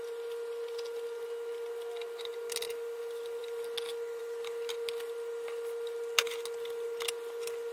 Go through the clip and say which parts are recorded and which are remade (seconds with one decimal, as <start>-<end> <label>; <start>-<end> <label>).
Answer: 0.0-7.7 recorded